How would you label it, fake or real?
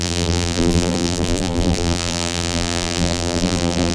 fake